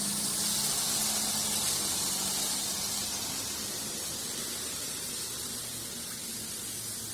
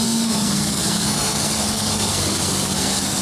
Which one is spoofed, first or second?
second